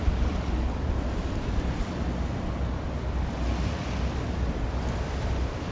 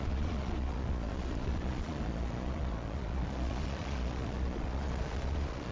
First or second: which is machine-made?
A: second